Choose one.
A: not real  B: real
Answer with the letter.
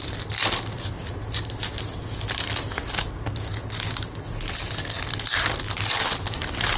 B